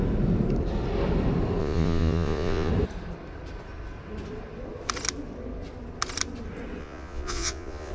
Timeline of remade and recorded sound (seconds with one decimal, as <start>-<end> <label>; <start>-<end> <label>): 0.0-1.6 recorded; 1.6-2.7 remade; 2.7-6.8 recorded; 6.8-7.9 remade